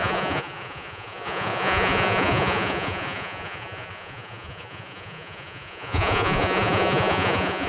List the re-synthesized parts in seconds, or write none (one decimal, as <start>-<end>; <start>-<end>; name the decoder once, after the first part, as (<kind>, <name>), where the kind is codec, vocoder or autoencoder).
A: 0.0-7.7 (vocoder, Vocos)